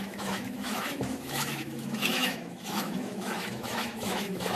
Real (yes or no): no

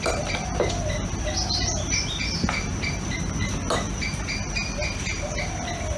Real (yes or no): yes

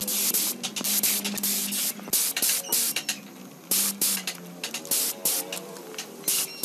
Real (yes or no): yes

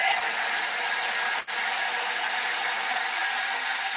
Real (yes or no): yes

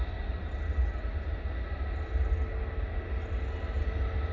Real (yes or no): yes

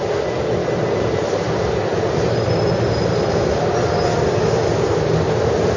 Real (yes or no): yes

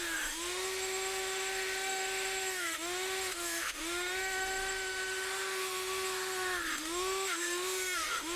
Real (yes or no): no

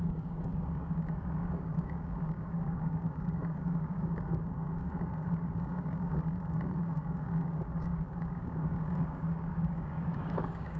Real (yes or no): no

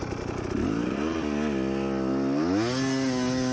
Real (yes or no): yes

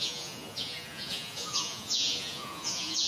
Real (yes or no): no